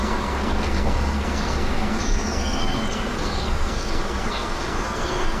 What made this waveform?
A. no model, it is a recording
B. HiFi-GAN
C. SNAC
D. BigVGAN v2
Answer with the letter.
C